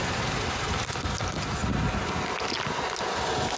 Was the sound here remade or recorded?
recorded